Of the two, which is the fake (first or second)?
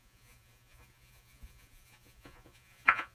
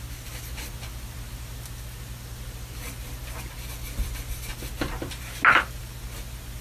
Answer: first